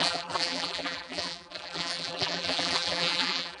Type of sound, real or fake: fake